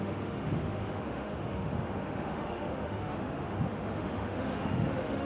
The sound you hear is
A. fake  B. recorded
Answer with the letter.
A